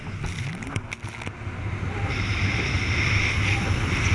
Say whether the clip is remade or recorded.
recorded